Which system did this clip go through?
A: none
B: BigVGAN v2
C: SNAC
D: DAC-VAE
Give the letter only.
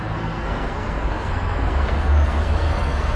C